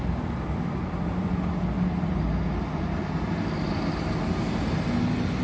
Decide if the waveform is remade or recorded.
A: recorded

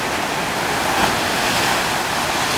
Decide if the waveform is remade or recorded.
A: recorded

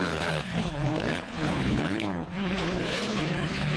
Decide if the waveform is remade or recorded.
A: remade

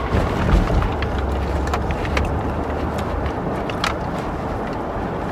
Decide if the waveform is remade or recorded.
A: recorded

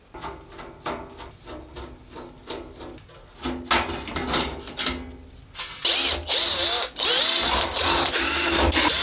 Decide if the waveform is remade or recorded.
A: recorded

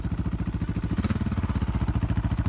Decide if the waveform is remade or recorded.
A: recorded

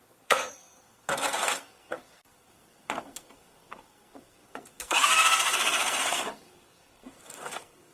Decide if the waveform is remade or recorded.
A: remade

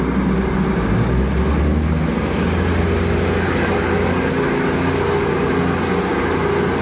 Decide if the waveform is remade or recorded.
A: recorded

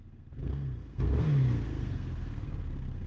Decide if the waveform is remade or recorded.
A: remade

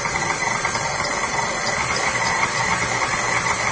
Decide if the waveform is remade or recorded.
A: recorded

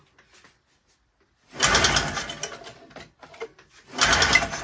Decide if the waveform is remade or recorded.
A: recorded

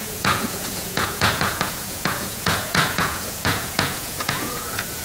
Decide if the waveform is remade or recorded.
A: remade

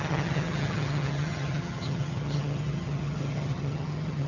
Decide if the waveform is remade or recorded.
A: remade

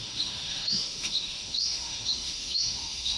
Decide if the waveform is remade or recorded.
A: remade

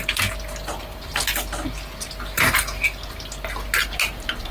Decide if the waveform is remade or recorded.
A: recorded